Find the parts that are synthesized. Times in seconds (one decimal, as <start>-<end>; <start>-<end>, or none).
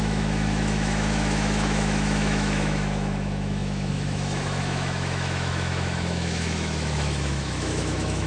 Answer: 0.0-8.3